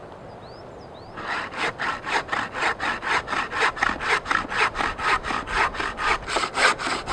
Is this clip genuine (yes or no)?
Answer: yes